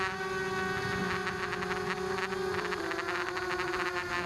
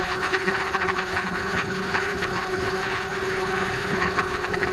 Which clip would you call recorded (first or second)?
first